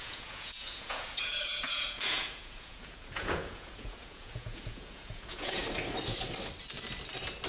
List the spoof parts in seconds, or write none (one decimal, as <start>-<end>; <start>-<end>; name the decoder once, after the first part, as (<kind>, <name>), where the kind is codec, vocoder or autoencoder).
0.0-5.6 (vocoder, Vocos)